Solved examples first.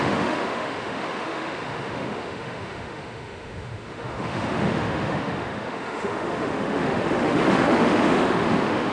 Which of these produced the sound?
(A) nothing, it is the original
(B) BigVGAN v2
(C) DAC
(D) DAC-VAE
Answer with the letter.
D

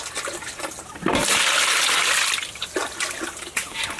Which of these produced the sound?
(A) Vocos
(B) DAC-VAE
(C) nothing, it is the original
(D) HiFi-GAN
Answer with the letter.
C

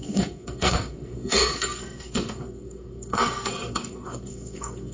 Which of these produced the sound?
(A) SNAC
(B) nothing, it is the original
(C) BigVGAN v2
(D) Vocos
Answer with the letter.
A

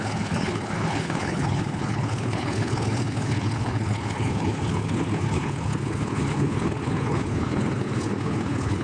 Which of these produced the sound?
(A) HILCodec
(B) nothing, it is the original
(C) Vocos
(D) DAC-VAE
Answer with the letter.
A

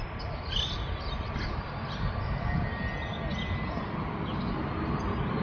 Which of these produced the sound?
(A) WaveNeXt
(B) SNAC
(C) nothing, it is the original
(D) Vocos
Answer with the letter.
C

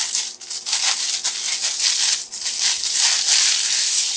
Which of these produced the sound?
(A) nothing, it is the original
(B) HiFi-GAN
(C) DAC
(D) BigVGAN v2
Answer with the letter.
D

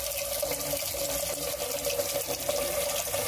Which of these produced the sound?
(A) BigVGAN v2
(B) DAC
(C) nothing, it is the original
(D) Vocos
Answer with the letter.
C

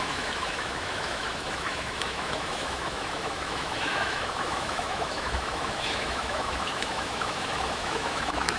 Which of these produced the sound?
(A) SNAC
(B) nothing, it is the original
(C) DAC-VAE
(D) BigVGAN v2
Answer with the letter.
C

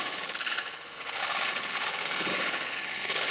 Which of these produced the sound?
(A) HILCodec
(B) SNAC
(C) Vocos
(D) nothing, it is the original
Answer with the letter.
A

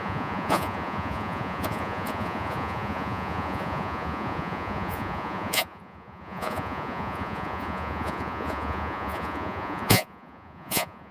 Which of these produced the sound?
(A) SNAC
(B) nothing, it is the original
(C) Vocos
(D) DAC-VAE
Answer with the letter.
C